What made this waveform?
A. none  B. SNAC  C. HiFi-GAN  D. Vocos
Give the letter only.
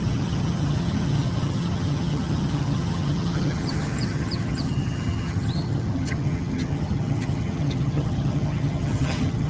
C